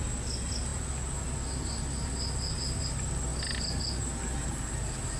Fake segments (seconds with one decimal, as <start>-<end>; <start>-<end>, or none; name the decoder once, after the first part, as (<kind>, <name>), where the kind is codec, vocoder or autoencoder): none